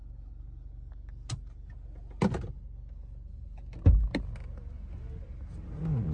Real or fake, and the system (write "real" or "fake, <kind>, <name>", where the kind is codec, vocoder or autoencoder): real